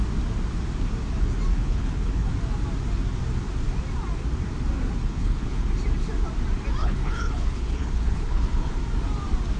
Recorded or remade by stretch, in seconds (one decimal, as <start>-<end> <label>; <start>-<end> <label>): 0.0-1.5 recorded; 1.5-2.3 remade; 2.3-5.0 recorded; 5.0-5.7 remade; 5.7-6.8 recorded; 6.8-8.8 remade; 8.8-9.6 recorded